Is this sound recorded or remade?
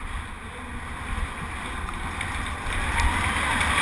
recorded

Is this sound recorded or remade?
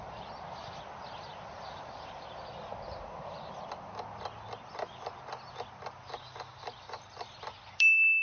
recorded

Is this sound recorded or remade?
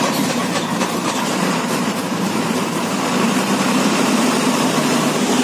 remade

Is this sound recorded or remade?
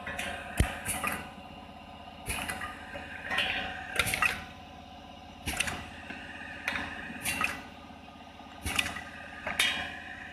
recorded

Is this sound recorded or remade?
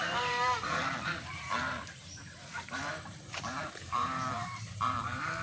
remade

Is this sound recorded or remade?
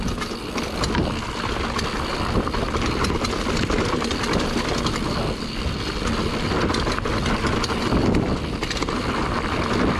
recorded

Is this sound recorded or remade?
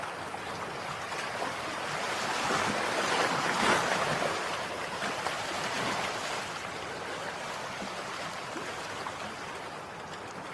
remade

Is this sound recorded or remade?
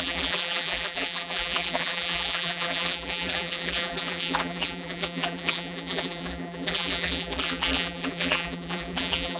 remade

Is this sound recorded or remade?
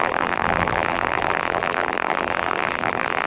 remade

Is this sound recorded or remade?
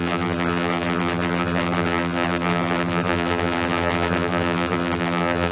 remade